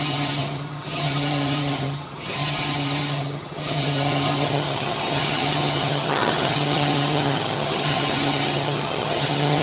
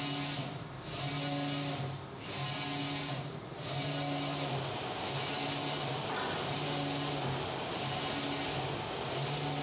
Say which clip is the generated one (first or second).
first